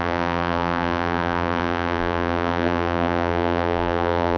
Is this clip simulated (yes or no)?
yes